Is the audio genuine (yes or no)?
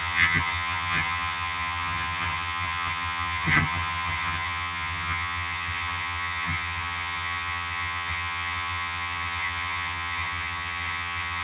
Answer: no